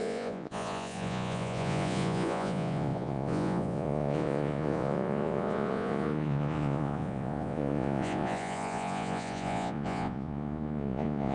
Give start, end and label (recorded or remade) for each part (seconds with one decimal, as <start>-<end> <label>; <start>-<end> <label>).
0.0-11.3 remade

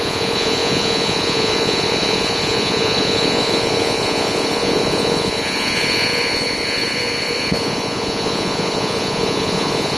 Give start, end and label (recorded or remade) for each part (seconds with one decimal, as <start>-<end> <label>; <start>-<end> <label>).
0.0-10.0 remade